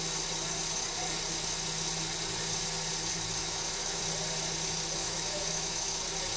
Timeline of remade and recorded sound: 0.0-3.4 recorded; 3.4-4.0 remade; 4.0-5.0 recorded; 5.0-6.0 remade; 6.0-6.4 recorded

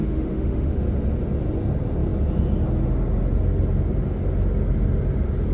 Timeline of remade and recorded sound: 0.0-0.7 remade; 0.7-5.5 recorded